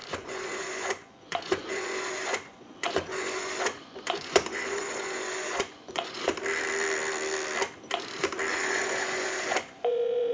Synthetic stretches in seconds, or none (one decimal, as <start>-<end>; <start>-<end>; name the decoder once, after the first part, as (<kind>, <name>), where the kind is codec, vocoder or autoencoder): 0.0-6.3 (vocoder, Vocos); 8.5-10.3